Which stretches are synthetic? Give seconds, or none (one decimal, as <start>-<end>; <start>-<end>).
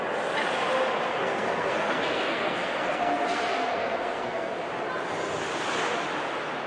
1.1-4.5